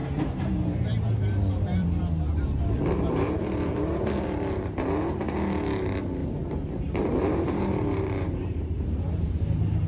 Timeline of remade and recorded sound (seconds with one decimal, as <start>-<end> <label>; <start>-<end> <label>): 0.0-2.6 remade; 2.6-6.2 recorded; 6.2-9.9 remade

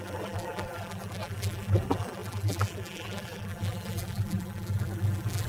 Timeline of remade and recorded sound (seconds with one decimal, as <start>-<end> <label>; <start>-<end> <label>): 0.0-5.5 remade

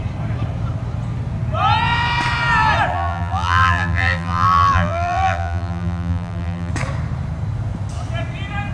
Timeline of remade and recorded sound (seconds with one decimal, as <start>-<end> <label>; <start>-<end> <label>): 0.0-2.9 recorded; 2.9-6.7 remade; 6.7-8.7 recorded

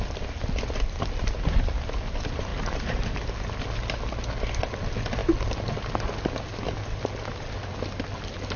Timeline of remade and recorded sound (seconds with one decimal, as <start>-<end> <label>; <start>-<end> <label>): 0.0-2.5 recorded; 2.5-3.1 remade; 3.1-8.6 recorded